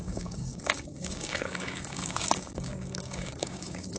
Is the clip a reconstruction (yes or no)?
yes